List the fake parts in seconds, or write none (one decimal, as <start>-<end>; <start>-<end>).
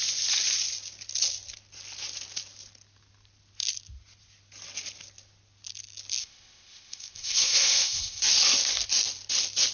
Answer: 6.2-8.2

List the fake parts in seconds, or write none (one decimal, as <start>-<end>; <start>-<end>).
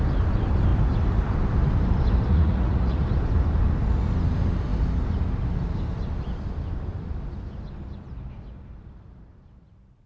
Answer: 2.3-3.0